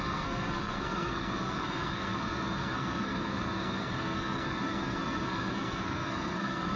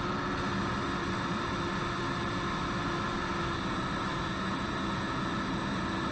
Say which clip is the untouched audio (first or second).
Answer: second